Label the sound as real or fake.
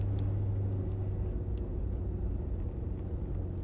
real